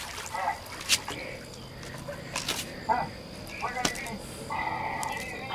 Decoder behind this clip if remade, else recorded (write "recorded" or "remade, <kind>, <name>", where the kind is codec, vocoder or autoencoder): recorded